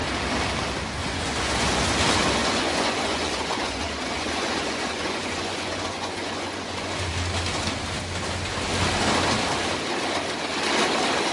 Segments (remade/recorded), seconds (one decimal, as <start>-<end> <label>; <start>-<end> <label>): 0.0-1.0 recorded; 1.0-1.8 remade; 1.8-2.4 recorded; 2.4-7.1 remade; 7.1-11.3 recorded